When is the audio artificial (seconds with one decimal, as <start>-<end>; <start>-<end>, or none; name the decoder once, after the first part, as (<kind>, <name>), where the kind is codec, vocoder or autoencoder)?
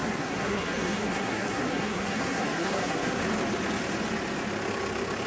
0.0-3.2 (codec, SNAC)